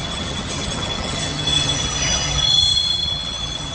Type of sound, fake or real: fake